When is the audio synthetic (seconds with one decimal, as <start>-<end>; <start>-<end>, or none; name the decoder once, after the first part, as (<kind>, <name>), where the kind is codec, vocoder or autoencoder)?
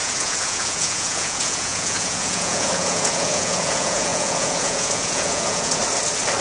0.0-5.8 (vocoder, Vocos)